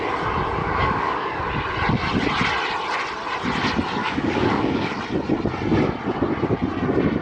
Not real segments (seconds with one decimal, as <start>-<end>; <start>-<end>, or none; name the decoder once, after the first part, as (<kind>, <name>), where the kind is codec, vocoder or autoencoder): 0.6-1.4 (codec, DAC); 4.0-5.0